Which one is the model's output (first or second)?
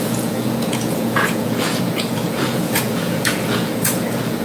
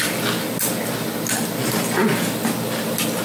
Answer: first